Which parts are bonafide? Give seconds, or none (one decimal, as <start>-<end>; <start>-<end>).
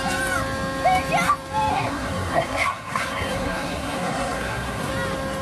0.0-1.7; 4.9-5.4